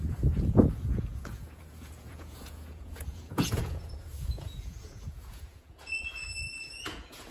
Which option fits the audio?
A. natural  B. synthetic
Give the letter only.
B